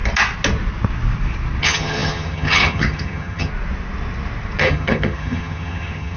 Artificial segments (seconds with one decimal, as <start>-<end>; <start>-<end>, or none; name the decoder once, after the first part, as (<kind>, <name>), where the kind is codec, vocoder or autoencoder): 1.6-3.5 (vocoder, HiFi-GAN); 4.6-6.2